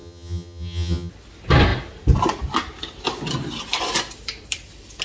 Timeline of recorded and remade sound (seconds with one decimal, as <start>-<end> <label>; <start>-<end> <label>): 0.0-1.1 remade; 1.1-5.0 recorded